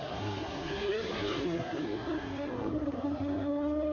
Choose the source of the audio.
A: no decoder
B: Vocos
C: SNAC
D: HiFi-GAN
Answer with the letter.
C